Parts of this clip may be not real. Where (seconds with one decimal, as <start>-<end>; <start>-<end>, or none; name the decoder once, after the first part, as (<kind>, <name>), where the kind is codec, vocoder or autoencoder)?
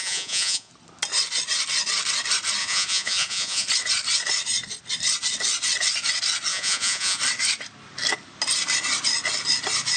0.0-0.7 (vocoder, Vocos); 2.6-3.7; 6.5-7.2